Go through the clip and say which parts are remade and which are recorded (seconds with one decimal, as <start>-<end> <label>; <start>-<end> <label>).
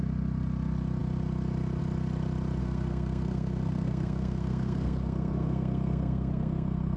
0.0-2.6 recorded; 2.6-7.0 remade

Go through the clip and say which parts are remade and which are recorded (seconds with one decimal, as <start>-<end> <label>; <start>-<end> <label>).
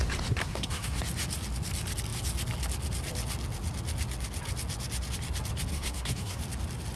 0.0-0.4 recorded; 0.4-1.0 remade; 1.0-5.7 recorded; 5.7-6.4 remade; 6.4-7.0 recorded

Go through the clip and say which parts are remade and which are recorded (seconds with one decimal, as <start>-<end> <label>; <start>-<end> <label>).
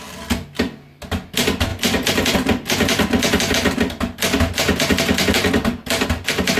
0.0-6.6 recorded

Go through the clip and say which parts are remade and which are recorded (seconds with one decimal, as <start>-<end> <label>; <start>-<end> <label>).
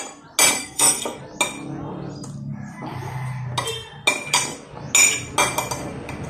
0.0-0.6 recorded; 0.6-1.2 remade; 1.2-6.3 recorded